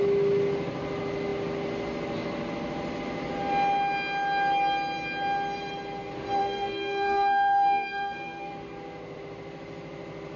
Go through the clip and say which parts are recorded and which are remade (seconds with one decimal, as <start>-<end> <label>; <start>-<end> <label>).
0.0-6.4 recorded; 6.4-8.5 remade; 8.5-10.4 recorded